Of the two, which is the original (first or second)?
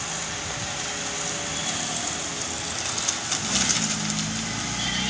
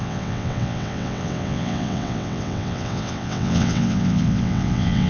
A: first